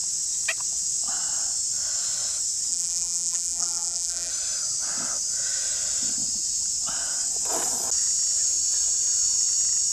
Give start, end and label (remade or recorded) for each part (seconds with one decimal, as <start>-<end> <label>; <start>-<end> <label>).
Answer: 0.0-2.7 recorded; 2.7-4.3 remade; 4.3-9.9 recorded